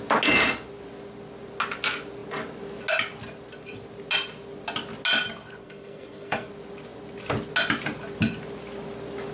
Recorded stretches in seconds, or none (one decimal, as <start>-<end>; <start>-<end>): 0.0-5.6; 6.5-9.3